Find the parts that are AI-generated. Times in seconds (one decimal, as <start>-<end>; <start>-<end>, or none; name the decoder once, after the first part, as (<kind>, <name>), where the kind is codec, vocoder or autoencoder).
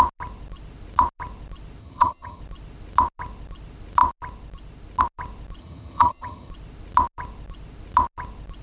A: 1.8-2.4 (vocoder, HiFi-GAN); 5.6-6.5